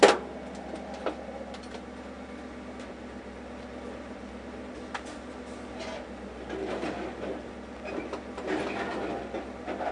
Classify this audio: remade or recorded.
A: recorded